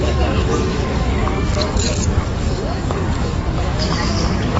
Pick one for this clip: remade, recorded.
remade